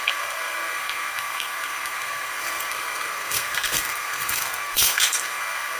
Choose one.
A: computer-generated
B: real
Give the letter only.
A